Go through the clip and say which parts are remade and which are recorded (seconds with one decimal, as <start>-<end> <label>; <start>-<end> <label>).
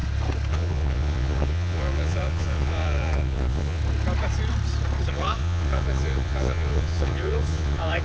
0.0-0.5 recorded; 0.5-3.8 remade; 3.8-5.1 recorded; 5.1-8.0 remade